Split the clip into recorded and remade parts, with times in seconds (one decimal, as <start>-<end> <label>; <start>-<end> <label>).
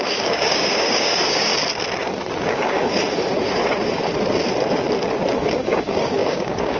0.0-1.5 remade; 1.5-2.5 recorded; 2.5-3.0 remade; 3.0-5.4 recorded; 5.4-6.8 remade